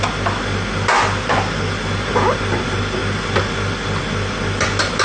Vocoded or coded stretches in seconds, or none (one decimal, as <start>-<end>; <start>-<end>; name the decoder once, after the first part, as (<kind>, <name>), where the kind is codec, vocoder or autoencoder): none